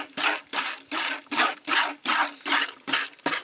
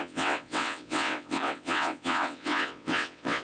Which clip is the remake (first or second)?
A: second